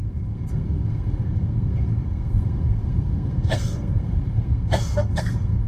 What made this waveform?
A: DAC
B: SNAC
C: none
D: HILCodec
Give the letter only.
B